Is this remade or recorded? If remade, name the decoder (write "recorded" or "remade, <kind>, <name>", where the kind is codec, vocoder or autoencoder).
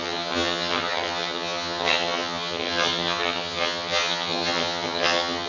remade, vocoder, HiFi-GAN